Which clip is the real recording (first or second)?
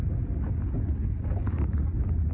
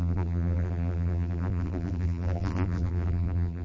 first